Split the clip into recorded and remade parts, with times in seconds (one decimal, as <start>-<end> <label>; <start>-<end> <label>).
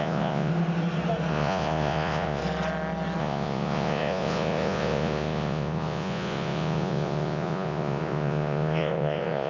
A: 0.0-0.5 remade; 0.5-1.3 recorded; 1.3-2.4 remade; 2.4-3.2 recorded; 3.2-9.5 remade